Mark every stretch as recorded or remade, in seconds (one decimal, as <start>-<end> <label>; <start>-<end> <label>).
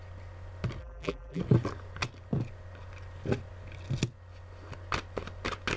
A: 0.0-0.8 recorded; 0.8-1.4 remade; 1.4-5.8 recorded